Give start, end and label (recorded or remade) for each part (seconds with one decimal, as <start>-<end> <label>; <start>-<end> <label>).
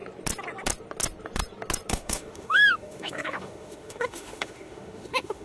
0.0-1.9 recorded; 1.9-5.4 remade